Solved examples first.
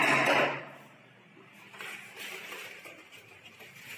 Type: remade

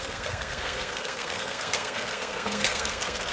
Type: remade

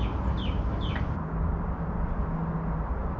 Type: recorded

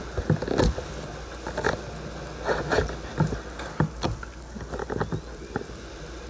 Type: recorded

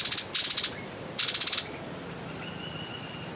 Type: recorded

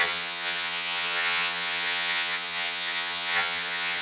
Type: remade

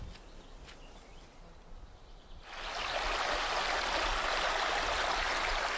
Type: recorded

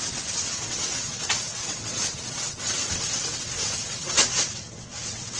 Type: remade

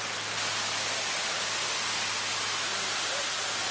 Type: recorded